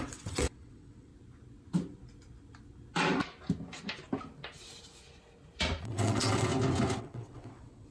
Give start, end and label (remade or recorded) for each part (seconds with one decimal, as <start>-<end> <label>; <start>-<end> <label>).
0.0-1.1 remade; 1.1-5.8 recorded; 5.8-6.5 remade; 6.5-7.0 recorded; 7.0-7.9 remade